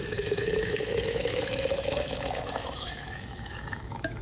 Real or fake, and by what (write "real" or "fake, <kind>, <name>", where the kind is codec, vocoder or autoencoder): fake, autoencoder, DAC-VAE